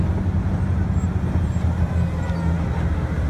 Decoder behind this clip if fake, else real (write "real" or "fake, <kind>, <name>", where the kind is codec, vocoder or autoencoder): real